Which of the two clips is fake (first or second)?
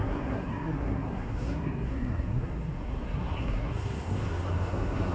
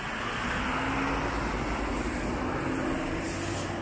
first